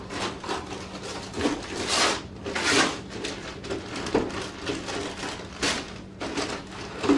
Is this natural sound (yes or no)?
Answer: yes